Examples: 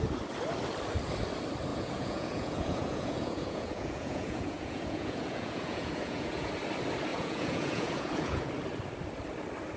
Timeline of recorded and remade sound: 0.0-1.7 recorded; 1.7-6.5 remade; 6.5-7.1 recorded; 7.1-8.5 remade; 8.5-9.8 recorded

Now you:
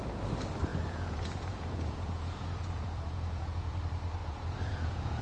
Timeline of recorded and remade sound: 0.0-0.7 recorded; 0.7-3.8 remade; 3.8-4.2 recorded; 4.2-5.2 remade

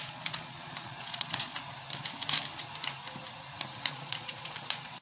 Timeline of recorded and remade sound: 0.0-1.5 remade; 1.5-3.9 recorded; 3.9-5.0 remade